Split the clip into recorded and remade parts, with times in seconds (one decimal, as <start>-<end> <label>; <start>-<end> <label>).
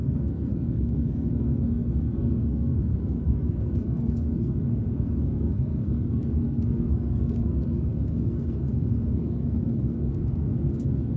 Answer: 0.0-11.2 remade